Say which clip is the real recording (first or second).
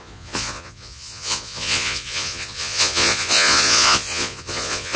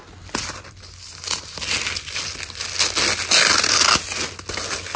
second